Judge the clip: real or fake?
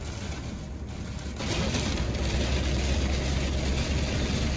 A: real